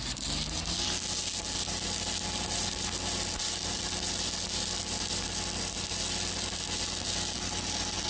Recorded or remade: recorded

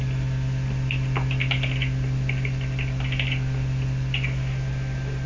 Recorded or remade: recorded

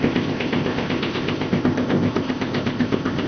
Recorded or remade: remade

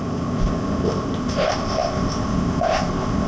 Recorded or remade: remade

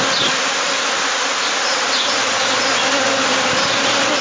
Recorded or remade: recorded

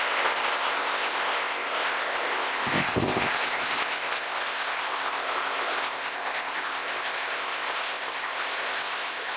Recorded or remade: remade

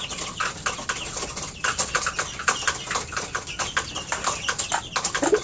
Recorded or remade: recorded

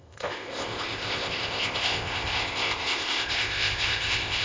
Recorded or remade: remade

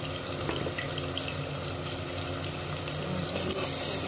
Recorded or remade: recorded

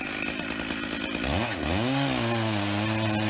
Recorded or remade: recorded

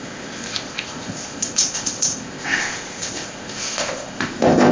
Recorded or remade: remade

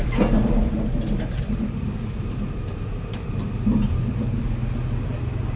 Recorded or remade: recorded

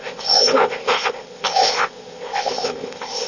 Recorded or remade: remade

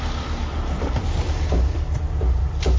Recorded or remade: recorded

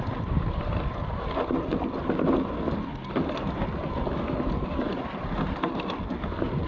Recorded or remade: recorded